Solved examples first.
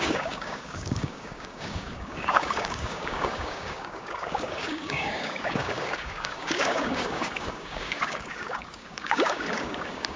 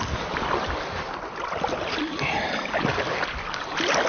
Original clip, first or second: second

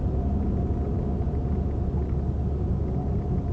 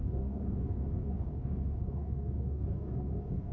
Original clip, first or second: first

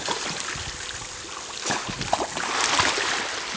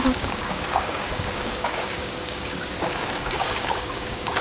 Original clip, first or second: first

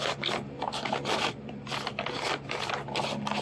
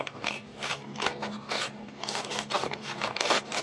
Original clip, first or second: first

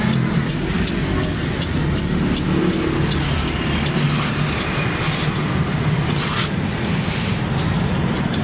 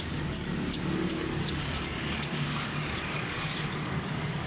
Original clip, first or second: first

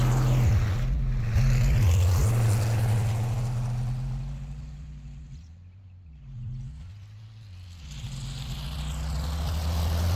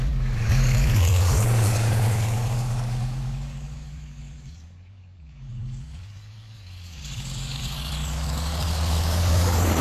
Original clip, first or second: first